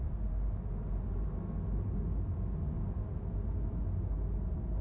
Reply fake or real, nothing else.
real